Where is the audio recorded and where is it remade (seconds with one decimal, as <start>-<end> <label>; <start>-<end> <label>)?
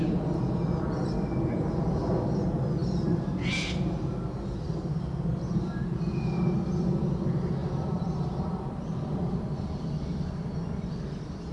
0.0-7.6 recorded; 7.6-9.8 remade; 9.8-11.5 recorded